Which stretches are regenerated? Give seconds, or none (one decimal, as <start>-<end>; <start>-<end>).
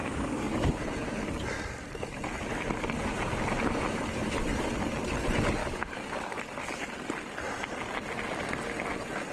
0.0-0.7; 5.6-6.4